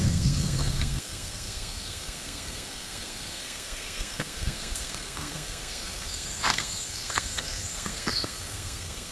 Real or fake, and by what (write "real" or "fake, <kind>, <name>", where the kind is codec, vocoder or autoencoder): fake, codec, SNAC